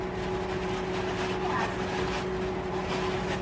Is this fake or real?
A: real